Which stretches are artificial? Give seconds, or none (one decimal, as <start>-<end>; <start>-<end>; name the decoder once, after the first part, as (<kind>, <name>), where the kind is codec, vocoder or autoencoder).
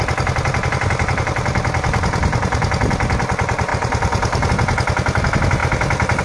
3.7-4.5 (vocoder, BigVGAN v2)